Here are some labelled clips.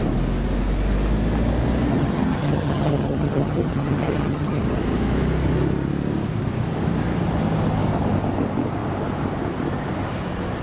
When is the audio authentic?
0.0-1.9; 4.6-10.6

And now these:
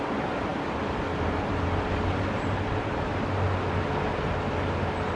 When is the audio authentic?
0.0-5.2

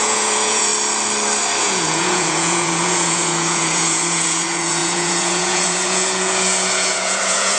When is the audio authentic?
0.7-1.6

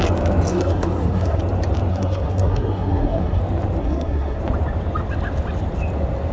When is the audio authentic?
0.0-0.5; 1.4-1.9; 3.4-3.8; 4.4-6.3

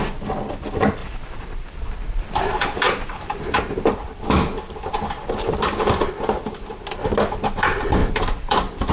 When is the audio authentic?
0.0-1.0; 1.9-2.6; 4.2-8.0

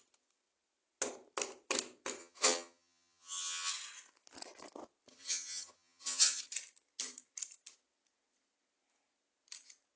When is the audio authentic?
0.0-2.2; 3.7-5.1; 6.4-10.0

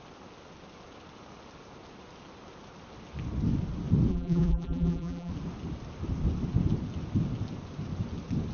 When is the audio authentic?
0.0-4.1; 5.3-8.5